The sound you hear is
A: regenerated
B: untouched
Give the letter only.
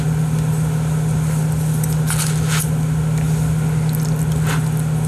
B